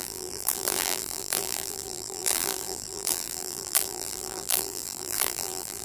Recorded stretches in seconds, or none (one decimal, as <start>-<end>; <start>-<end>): none